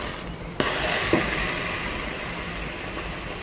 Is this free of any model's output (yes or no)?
yes